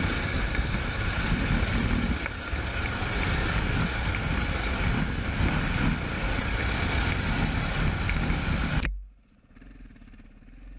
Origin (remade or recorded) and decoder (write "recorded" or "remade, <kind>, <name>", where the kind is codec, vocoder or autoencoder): recorded